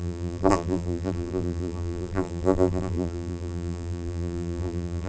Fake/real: fake